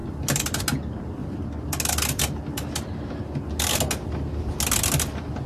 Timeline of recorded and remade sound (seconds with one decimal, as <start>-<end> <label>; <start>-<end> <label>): 0.0-0.6 remade; 0.6-5.5 recorded